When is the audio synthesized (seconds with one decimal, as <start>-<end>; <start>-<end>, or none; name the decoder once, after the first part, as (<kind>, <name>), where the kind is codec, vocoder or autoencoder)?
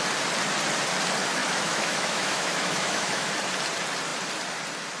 1.4-3.3 (autoencoder, DAC-VAE)